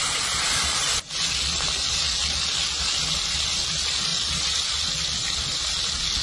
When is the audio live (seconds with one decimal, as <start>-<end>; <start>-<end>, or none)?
1.6-3.0; 3.6-4.1; 5.8-6.2